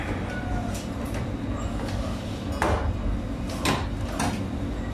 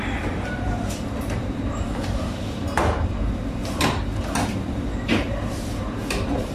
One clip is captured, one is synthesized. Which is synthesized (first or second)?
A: second